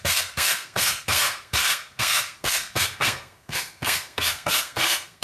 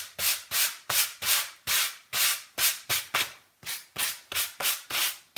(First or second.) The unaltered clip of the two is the second